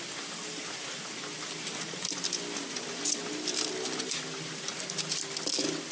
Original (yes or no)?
yes